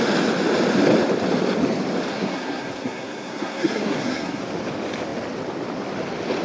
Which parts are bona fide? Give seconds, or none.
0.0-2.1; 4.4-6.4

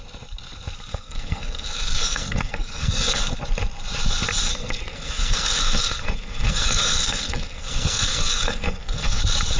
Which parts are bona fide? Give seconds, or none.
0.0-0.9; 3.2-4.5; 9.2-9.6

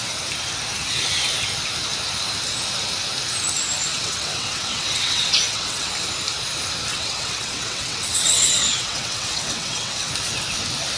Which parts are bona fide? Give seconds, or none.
0.0-3.9; 5.9-6.9; 10.1-11.0

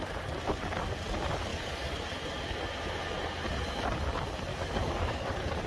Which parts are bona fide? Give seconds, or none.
0.0-1.5; 2.0-4.5; 5.3-5.7

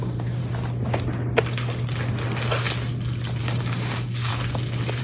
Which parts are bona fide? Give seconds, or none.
0.4-3.4; 4.3-5.0

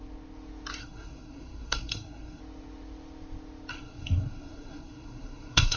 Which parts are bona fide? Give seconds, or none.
0.0-0.8; 2.4-3.7

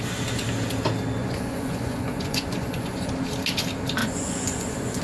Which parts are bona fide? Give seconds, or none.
0.0-1.2; 3.1-4.0